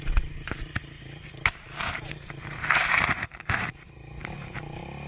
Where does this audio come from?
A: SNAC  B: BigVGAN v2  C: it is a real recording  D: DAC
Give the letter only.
B